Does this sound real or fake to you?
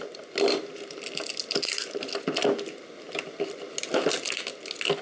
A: real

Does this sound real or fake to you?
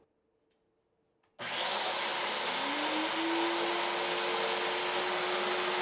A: real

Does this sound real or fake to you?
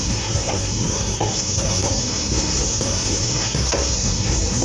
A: fake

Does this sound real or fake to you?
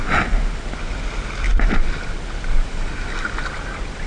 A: real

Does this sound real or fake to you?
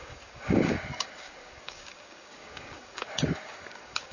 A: fake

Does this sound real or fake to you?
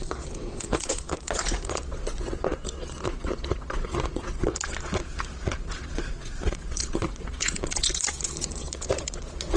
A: fake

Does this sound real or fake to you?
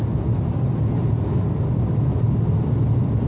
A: real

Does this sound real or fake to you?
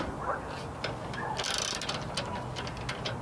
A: real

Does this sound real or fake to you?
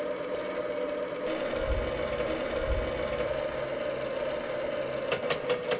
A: real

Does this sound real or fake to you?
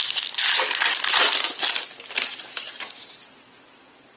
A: real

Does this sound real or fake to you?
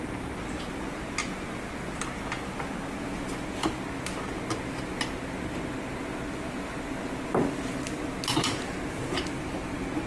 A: real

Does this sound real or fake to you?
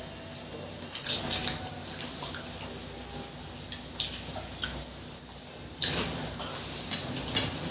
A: real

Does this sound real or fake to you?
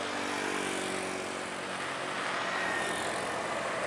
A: real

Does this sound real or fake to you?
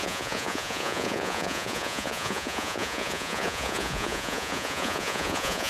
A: fake